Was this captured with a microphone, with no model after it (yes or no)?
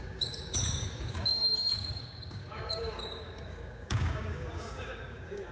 no